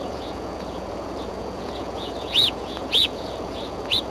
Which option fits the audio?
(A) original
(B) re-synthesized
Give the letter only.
B